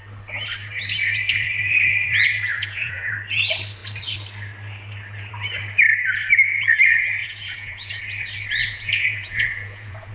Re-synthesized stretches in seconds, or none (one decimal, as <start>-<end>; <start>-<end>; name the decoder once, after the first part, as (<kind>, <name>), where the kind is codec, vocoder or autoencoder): 2.5-3.1 (vocoder, Vocos); 7.2-8.0; 8.6-10.1